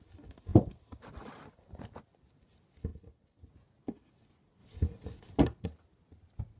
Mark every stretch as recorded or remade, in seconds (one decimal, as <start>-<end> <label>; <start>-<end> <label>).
0.0-0.5 recorded; 0.5-1.5 remade; 1.5-4.6 recorded; 4.6-5.4 remade; 5.4-6.6 recorded